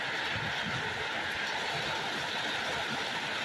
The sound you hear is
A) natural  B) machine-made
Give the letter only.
A